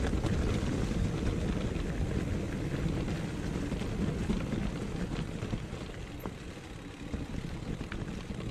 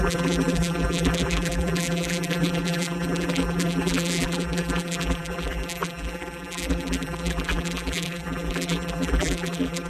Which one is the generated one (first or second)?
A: second